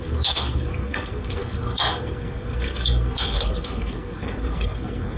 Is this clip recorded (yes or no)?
no